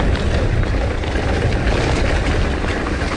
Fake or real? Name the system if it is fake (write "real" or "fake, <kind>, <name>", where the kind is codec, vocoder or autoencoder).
real